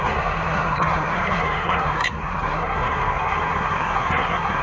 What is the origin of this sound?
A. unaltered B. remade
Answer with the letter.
B